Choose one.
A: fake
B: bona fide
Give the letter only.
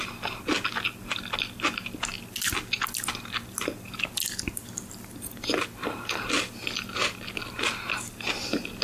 B